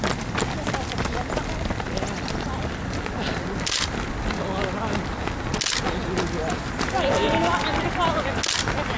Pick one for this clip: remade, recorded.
recorded